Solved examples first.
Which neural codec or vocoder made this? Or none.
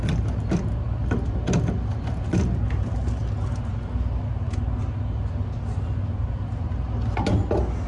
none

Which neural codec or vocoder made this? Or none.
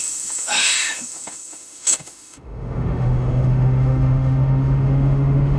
autoencoder, DAC-VAE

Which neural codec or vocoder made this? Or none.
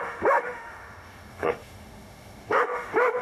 autoencoder, DAC-VAE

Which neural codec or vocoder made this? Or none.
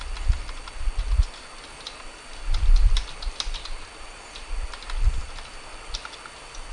none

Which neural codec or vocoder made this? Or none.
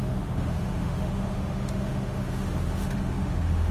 autoencoder, DAC-VAE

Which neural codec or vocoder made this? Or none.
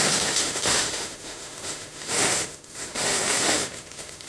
autoencoder, DAC-VAE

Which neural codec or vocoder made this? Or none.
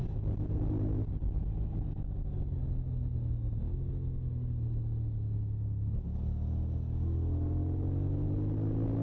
none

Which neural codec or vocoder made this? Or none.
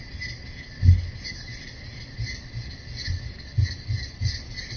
none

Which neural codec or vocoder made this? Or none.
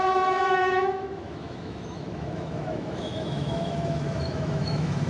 autoencoder, DAC-VAE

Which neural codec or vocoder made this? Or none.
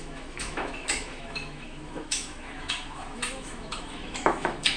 autoencoder, DAC-VAE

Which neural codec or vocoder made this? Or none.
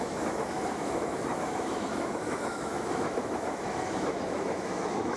autoencoder, DAC-VAE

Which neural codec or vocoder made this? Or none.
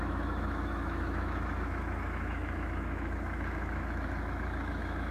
autoencoder, DAC-VAE